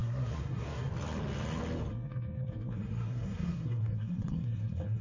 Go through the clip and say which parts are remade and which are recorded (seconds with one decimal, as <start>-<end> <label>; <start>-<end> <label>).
0.0-0.9 remade; 0.9-1.9 recorded; 1.9-5.0 remade